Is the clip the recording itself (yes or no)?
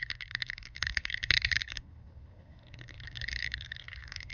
no